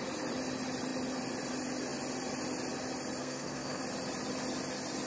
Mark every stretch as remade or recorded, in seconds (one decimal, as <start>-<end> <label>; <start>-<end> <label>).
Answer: 0.0-3.2 recorded; 3.2-3.8 remade; 3.8-5.1 recorded

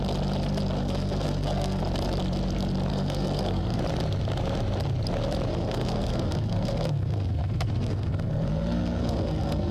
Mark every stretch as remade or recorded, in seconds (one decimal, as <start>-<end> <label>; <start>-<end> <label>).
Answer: 0.0-0.8 recorded; 0.8-1.8 remade; 1.8-2.9 recorded; 2.9-3.8 remade; 3.8-5.5 recorded; 5.5-9.7 remade